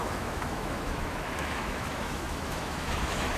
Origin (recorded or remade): remade